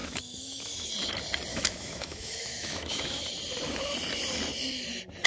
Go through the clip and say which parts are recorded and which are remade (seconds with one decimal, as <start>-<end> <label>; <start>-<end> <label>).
0.0-0.9 remade; 0.9-1.5 recorded; 1.5-3.3 remade; 3.3-5.3 recorded